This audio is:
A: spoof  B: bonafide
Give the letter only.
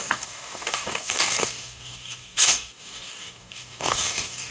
A